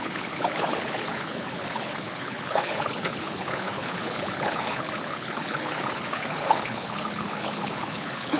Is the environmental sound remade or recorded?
remade